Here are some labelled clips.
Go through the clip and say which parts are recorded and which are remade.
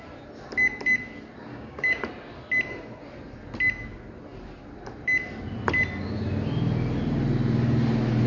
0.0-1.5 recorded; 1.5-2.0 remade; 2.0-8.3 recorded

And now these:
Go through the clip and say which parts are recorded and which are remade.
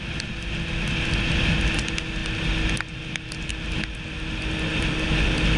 0.0-4.7 recorded; 4.7-5.6 remade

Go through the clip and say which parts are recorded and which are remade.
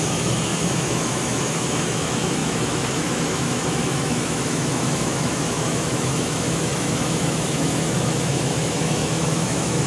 0.0-9.9 remade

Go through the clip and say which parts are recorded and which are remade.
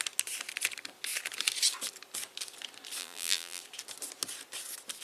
0.0-3.0 recorded; 3.0-3.6 remade; 3.6-5.0 recorded